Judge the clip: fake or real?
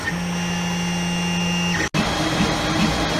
real